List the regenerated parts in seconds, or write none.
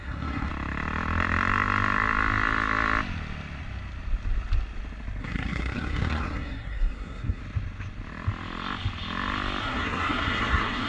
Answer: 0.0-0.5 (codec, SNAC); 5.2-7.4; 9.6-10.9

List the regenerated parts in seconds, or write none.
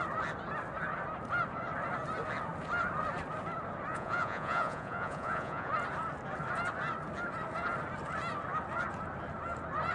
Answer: 3.9-5.7 (vocoder, Vocos)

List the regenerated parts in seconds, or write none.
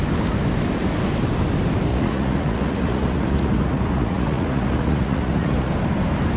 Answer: 1.9-5.7 (vocoder, Vocos)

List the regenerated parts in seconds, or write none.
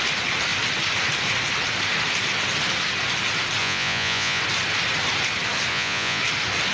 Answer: 3.6-4.4 (vocoder, Vocos); 5.7-6.2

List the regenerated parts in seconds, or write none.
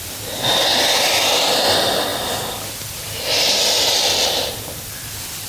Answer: 2.1-5.5 (vocoder, BigVGAN v2)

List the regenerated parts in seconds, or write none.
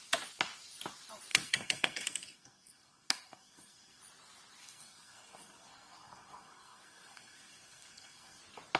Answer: 1.3-4.0 (codec, SNAC); 4.6-8.4